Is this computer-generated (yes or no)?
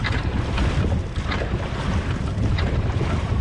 yes